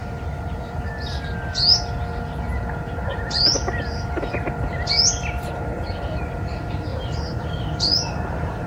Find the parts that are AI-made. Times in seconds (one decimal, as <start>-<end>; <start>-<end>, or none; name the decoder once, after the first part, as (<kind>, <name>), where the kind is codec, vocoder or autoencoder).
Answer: 0.0-0.9 (vocoder, BigVGAN v2); 6.9-8.7